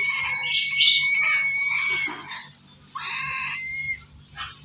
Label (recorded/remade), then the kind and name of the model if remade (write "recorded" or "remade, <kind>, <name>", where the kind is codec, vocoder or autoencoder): recorded